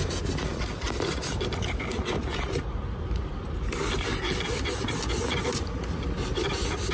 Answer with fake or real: real